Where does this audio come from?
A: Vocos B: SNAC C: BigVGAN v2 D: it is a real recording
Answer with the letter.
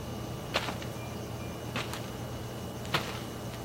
D